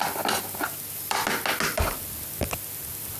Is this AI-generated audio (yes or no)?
no